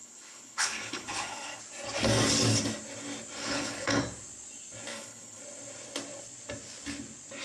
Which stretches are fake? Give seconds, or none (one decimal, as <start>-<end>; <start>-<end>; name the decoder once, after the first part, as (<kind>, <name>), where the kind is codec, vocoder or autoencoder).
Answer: 0.0-1.6 (codec, HILCodec); 3.4-4.0; 4.9-5.4